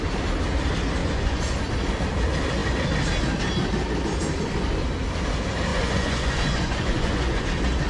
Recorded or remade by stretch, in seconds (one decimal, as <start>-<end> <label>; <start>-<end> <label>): 0.0-1.0 recorded; 1.0-1.6 remade; 1.6-5.7 recorded; 5.7-7.4 remade; 7.4-7.9 recorded